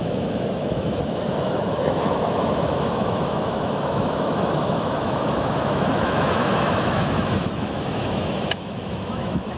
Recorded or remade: remade